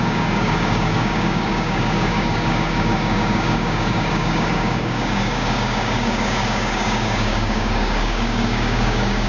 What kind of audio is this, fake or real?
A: fake